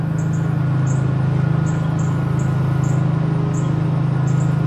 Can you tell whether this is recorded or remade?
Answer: recorded